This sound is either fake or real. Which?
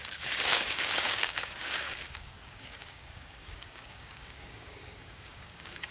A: fake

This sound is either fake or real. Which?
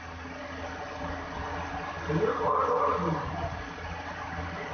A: real